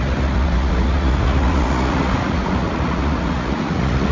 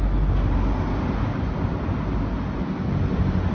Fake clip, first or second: first